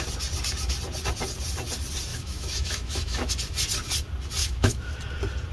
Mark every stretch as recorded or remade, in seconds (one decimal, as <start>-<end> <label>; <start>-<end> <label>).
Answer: 0.0-2.1 recorded; 2.1-3.3 remade; 3.3-4.4 recorded; 4.4-4.9 remade; 4.9-5.5 recorded